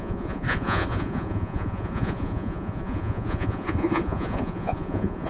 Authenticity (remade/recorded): remade